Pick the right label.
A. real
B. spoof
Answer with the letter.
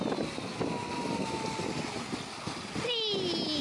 A